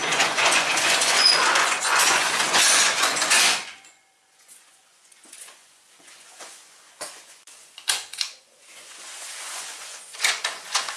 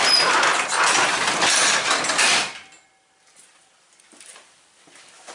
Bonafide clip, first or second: second